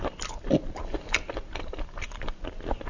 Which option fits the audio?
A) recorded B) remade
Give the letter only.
A